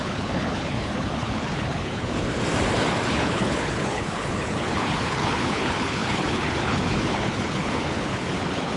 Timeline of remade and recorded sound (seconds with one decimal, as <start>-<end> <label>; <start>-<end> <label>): 0.0-2.3 remade; 2.3-3.1 recorded; 3.1-8.8 remade